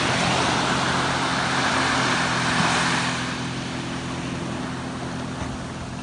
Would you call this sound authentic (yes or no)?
yes